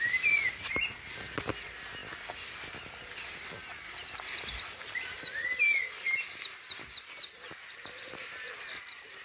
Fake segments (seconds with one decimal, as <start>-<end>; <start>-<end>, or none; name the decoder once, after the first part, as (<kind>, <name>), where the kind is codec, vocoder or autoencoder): none